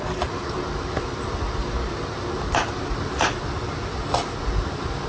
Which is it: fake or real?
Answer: real